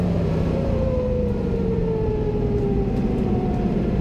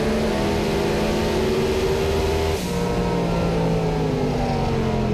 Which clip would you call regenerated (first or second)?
first